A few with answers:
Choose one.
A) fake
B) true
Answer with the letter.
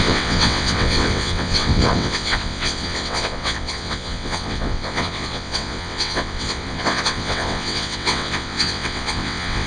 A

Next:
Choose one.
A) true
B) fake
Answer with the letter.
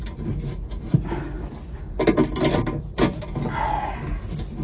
A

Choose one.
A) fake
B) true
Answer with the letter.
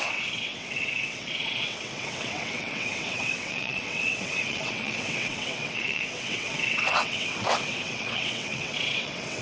A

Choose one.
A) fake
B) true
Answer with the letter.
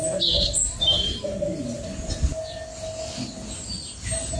B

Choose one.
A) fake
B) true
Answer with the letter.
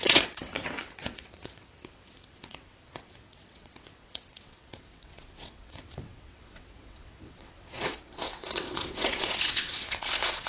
A